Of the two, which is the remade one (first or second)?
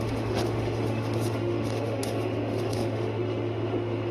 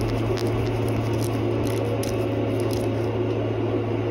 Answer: first